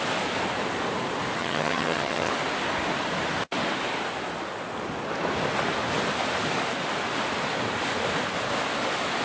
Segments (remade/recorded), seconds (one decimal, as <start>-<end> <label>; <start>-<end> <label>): 0.0-1.4 recorded; 1.4-2.3 remade; 2.3-9.2 recorded